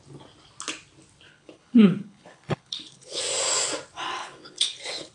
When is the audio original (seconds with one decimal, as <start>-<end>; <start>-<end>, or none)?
0.0-1.3; 3.2-4.2